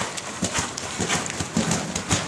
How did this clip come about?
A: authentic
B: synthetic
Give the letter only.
A